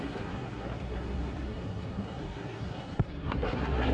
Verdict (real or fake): fake